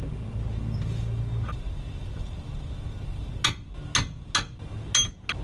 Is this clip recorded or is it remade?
recorded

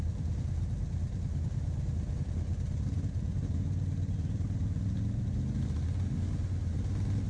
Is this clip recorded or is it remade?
recorded